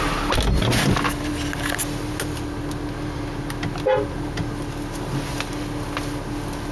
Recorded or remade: recorded